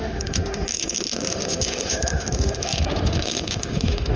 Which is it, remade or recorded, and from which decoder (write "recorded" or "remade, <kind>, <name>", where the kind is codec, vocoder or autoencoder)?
remade, autoencoder, DAC-VAE